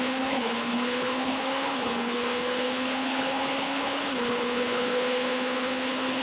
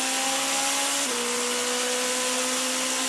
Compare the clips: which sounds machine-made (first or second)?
first